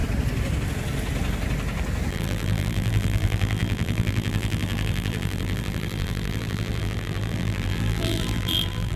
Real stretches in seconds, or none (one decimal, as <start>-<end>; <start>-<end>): 0.0-2.1